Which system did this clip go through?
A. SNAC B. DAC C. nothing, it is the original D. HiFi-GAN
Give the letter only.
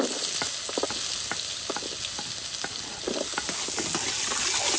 C